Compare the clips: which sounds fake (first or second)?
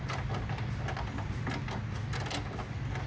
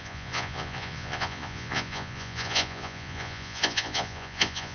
second